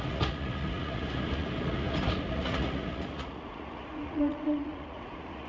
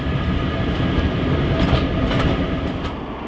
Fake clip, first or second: first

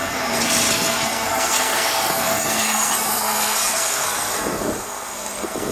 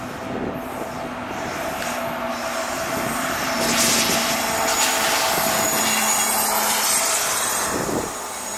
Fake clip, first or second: first